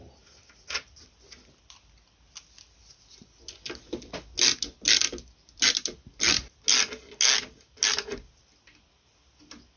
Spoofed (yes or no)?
no